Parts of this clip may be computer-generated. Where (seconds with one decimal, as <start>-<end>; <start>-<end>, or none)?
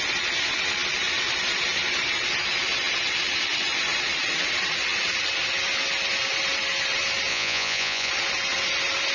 7.3-8.1